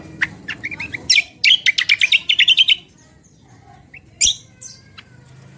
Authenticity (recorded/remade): recorded